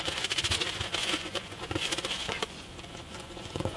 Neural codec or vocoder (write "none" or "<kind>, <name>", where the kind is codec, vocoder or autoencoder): vocoder, Vocos